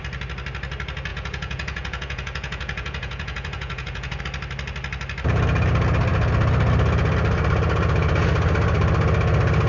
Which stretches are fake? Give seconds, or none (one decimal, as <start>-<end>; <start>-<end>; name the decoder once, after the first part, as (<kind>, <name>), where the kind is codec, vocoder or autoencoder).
1.1-4.2 (vocoder, Vocos)